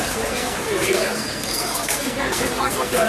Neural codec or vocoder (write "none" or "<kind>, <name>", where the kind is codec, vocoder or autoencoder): codec, SNAC